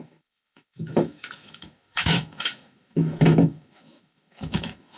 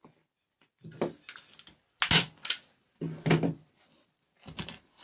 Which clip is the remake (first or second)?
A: first